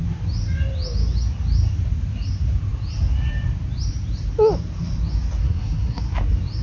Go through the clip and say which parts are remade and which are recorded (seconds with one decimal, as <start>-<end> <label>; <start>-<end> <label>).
0.0-5.4 recorded; 5.4-6.0 remade; 6.0-6.6 recorded